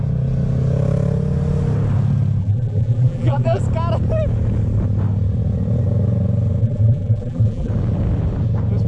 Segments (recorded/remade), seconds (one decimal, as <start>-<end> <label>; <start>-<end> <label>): 0.0-2.4 recorded; 2.4-3.6 remade; 3.6-6.6 recorded; 6.6-7.7 remade; 7.7-8.9 recorded